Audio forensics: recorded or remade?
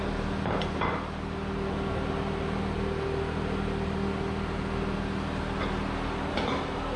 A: recorded